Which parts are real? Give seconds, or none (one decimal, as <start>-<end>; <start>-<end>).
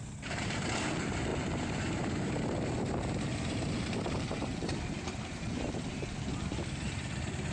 none